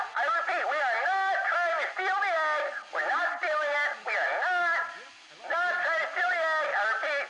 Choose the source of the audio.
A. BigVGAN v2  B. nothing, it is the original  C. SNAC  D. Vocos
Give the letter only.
B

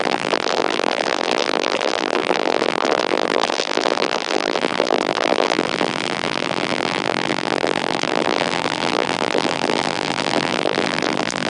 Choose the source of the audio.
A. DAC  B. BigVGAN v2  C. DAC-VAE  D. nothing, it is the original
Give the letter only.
B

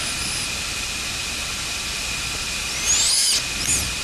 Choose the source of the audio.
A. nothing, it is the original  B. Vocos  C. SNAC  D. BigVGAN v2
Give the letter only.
A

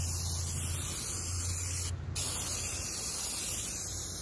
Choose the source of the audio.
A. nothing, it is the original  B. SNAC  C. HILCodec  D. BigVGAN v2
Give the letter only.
A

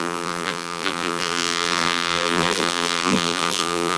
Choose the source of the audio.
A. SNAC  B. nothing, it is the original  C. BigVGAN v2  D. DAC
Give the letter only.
C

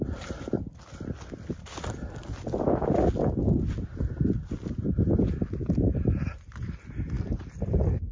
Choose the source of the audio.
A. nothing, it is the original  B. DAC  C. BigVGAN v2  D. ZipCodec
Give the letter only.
A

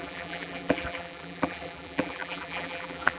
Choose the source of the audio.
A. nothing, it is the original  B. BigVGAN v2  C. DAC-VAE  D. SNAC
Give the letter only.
B